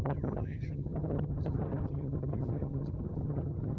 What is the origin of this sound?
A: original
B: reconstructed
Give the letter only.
B